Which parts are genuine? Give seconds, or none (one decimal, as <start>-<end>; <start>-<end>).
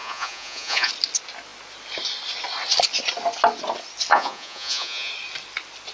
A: 0.9-4.1; 5.1-5.9